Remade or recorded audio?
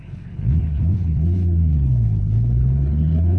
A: remade